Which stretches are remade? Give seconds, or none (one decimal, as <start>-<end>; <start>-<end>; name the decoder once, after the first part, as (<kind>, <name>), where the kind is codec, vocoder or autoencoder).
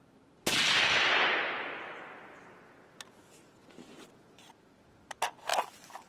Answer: 5.5-6.1 (vocoder, BigVGAN v2)